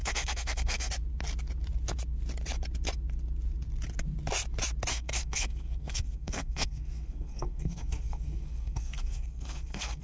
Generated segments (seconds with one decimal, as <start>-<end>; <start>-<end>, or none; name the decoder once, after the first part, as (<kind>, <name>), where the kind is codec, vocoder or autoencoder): 0.0-0.9 (codec, SNAC); 4.9-10.0